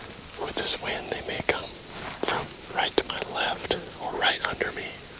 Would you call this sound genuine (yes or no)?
yes